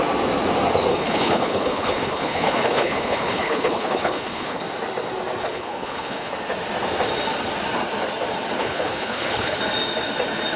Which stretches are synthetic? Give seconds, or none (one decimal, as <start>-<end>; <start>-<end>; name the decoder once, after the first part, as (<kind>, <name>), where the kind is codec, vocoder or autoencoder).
0.9-4.6 (codec, HILCodec); 5.4-6.3; 8.6-9.6

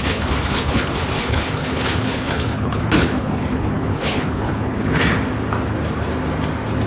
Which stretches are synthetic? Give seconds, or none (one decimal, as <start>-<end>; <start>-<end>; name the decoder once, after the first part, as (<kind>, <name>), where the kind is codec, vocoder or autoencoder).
0.0-5.0 (codec, HILCodec)

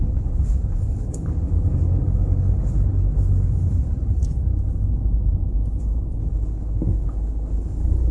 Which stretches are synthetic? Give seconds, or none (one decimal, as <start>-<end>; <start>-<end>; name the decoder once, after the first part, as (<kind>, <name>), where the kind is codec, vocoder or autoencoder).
0.0-4.2 (codec, HILCodec); 6.2-8.1

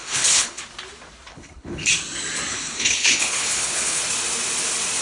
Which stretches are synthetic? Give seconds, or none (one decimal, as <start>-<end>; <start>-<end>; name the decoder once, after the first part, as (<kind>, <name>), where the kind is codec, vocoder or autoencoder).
0.0-0.6 (codec, HILCodec); 1.3-1.9; 2.5-4.0

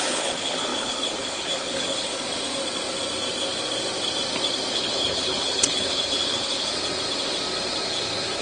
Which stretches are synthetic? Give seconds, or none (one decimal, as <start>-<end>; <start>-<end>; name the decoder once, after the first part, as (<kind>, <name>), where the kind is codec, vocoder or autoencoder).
0.0-2.1 (codec, HILCodec); 4.7-6.7

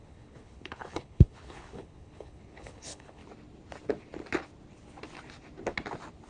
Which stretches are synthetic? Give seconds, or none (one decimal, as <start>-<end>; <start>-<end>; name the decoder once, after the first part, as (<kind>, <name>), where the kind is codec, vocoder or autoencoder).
0.0-3.2 (codec, HILCodec)